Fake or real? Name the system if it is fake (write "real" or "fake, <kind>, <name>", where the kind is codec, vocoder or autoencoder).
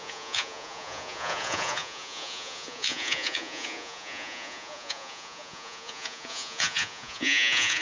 fake, vocoder, Vocos